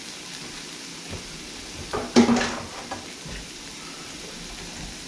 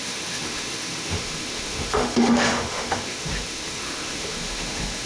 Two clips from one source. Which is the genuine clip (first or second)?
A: first